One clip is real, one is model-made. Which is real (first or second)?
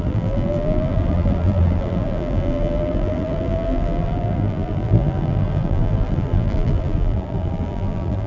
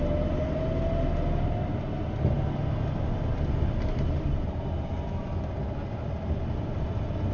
second